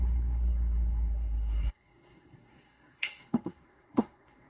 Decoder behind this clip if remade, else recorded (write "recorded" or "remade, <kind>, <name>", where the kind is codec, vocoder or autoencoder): remade, codec, SNAC